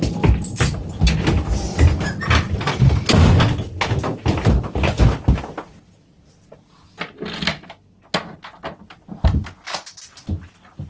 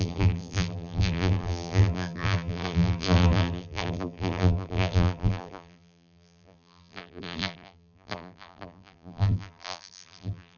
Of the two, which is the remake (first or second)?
second